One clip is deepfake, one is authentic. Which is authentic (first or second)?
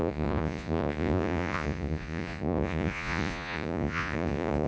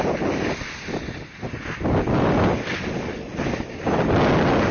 second